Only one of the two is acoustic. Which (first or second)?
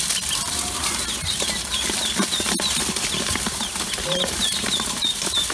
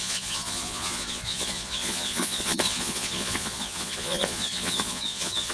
first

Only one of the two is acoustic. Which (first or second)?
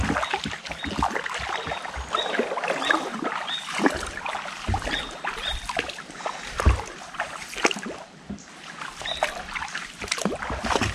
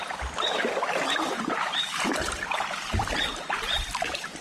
first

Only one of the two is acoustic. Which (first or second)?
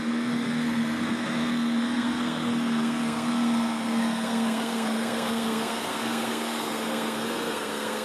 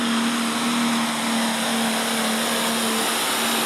second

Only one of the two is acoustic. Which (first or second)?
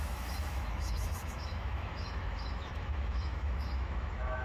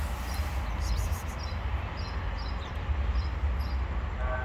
second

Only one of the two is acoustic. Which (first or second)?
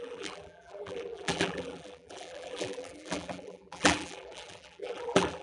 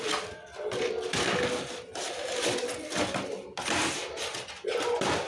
second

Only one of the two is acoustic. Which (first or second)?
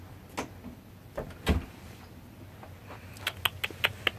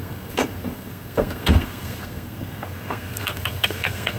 first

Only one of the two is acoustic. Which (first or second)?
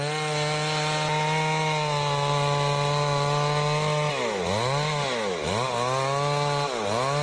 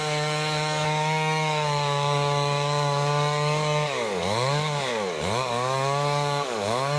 first